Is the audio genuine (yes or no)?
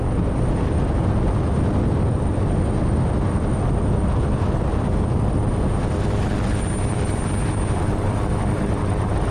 yes